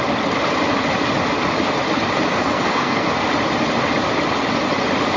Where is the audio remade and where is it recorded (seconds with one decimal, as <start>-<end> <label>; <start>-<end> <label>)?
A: 0.0-2.3 recorded; 2.3-3.1 remade; 3.1-5.2 recorded